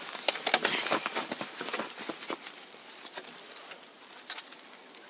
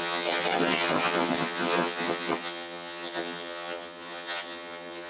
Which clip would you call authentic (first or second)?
first